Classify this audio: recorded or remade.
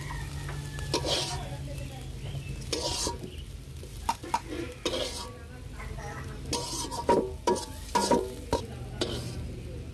recorded